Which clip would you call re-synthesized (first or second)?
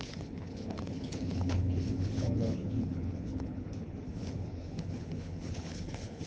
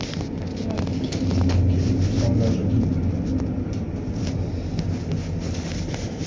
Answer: first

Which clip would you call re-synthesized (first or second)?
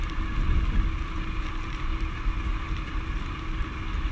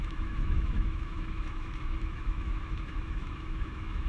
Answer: second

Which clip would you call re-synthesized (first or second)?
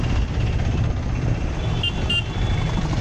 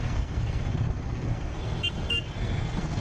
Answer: second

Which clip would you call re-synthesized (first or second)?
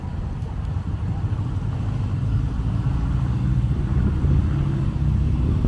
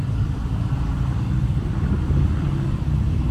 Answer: second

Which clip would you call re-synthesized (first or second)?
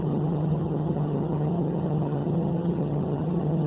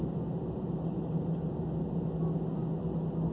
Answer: first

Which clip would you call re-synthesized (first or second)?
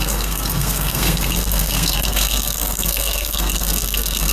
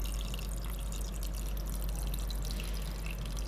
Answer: first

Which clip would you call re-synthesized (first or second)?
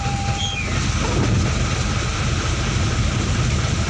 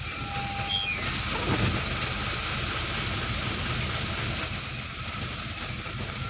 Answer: first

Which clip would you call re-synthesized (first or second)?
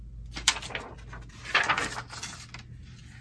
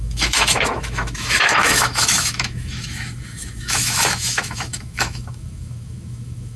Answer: second